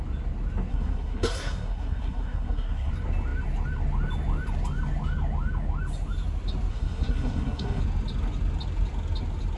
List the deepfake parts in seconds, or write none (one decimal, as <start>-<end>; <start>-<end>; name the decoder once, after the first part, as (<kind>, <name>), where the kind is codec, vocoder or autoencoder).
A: 0.7-2.9 (codec, SNAC); 6.7-7.8